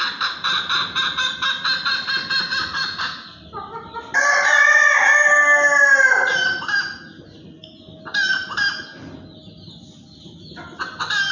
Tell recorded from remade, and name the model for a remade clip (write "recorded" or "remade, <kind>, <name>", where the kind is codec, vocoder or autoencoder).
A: recorded